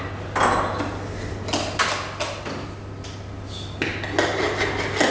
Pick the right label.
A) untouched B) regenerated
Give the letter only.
A